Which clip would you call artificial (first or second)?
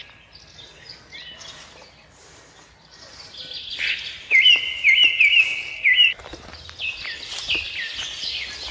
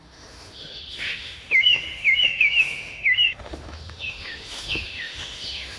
second